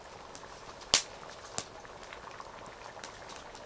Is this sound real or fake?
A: real